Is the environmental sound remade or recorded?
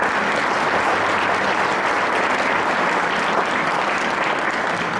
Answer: recorded